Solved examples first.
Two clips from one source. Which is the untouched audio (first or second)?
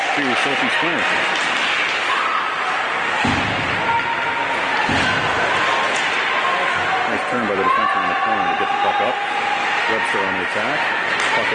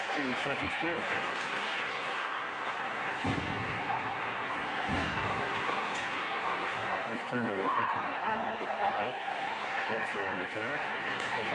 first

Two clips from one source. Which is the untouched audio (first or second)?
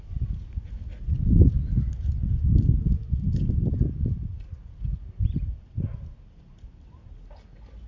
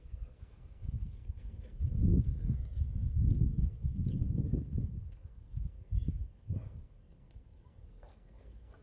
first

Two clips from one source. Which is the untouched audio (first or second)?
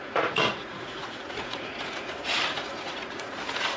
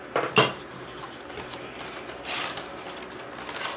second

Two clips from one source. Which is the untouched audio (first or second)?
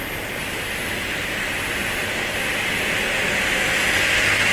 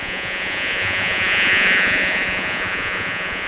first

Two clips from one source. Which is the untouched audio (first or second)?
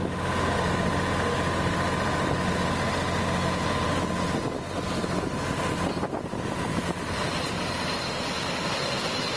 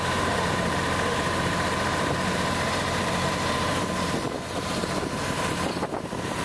first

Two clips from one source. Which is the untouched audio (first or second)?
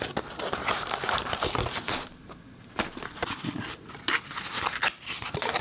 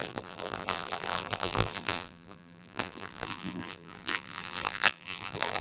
first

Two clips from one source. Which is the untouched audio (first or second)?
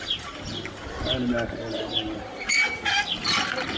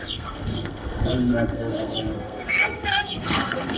first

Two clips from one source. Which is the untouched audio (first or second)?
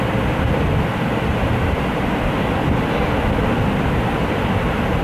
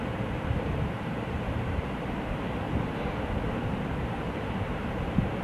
first